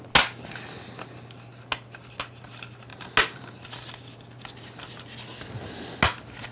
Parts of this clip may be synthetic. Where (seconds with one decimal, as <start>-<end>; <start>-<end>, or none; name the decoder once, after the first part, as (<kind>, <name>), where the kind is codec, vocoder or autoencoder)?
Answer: none